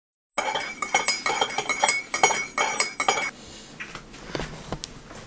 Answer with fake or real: real